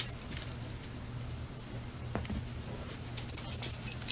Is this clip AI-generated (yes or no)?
no